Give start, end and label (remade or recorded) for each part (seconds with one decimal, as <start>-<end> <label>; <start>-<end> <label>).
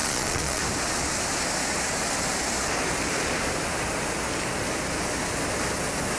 0.0-0.6 remade; 0.6-6.2 recorded